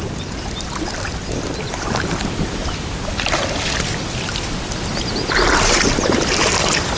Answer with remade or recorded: recorded